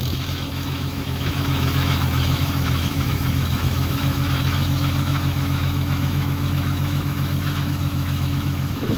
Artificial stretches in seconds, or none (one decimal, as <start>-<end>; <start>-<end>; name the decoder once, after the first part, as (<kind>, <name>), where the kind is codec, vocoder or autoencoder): 0.0-9.0 (autoencoder, DAC-VAE)